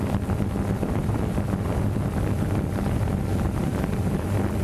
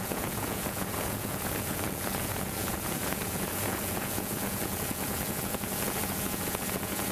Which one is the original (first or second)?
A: first